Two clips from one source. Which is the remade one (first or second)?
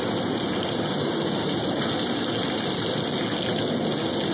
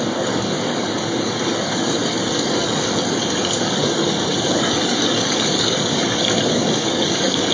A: second